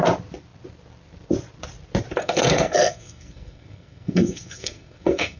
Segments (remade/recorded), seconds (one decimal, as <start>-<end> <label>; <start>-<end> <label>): 0.0-2.2 recorded; 2.2-5.4 remade